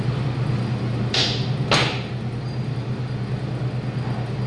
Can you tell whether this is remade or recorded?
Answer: recorded